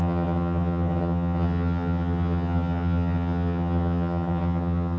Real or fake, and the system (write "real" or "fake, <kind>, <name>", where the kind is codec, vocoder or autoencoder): fake, vocoder, HiFi-GAN